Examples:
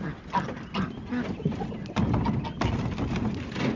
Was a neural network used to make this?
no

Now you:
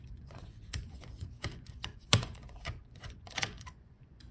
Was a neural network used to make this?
yes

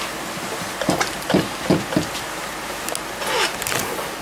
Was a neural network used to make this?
no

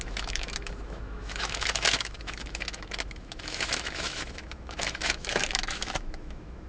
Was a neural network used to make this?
yes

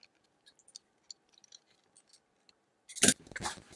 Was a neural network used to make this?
no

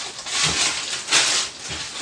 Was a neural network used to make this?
no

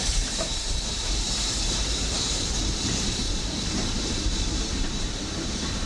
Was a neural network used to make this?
yes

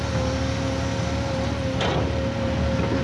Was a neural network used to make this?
no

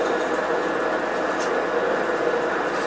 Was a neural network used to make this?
no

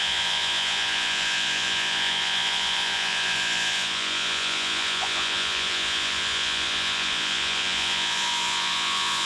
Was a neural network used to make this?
yes